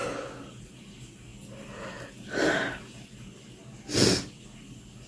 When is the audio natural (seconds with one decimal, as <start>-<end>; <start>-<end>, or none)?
0.0-5.1

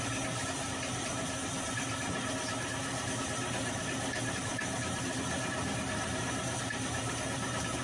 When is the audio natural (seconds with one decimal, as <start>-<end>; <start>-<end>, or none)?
1.4-4.3

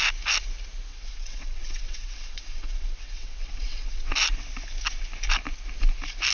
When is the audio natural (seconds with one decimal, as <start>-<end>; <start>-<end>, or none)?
0.0-0.9; 4.1-6.3

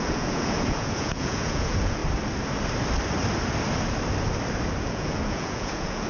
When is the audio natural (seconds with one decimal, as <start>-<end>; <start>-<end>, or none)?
2.0-4.8

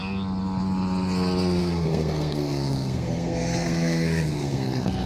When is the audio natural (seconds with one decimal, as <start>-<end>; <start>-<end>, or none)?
0.0-1.6

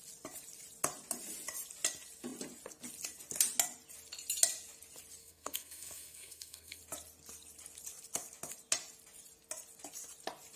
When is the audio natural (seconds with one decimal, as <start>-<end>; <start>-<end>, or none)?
0.0-5.2; 6.8-10.6

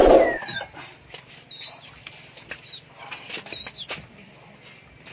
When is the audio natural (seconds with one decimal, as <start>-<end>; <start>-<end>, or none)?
0.0-5.1